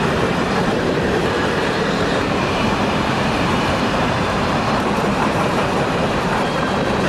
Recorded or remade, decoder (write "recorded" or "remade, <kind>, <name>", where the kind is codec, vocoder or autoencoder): remade, vocoder, BigVGAN v2